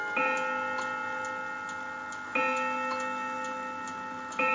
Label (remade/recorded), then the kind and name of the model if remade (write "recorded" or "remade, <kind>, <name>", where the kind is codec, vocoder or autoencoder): recorded